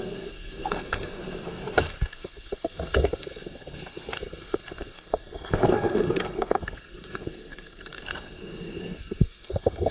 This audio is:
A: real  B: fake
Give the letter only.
B